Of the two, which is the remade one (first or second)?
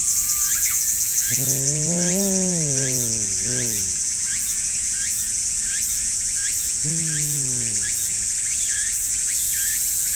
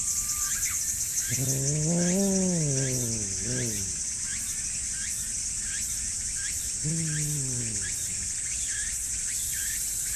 first